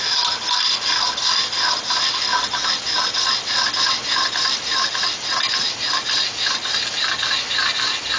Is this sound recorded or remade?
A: recorded